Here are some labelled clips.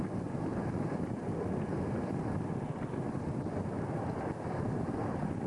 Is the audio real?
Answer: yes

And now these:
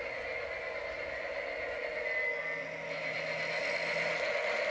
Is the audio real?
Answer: yes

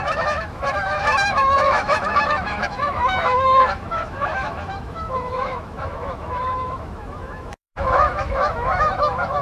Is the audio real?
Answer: no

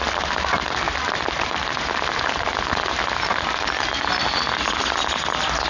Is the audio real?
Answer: yes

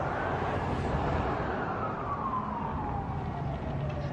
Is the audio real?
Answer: yes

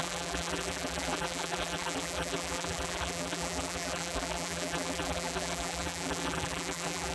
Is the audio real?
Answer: no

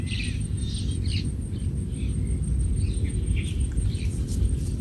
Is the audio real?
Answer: no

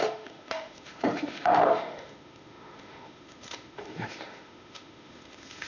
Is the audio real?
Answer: no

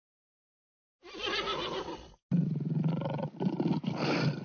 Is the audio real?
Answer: yes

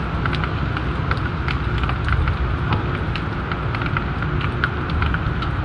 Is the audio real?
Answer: yes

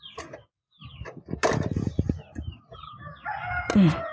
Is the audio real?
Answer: yes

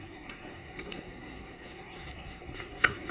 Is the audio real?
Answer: no